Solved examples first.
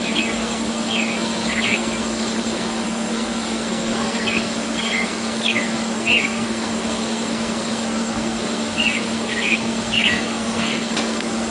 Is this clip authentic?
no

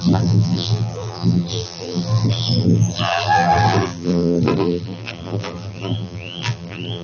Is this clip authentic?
no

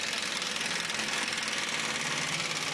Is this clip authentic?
yes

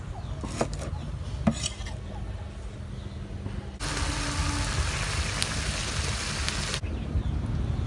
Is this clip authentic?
yes